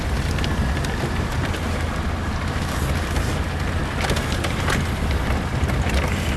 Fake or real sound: real